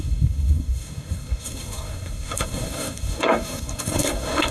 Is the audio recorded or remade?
remade